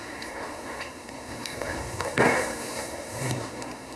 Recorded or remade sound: remade